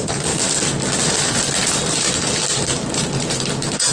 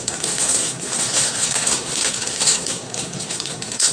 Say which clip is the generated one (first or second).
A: second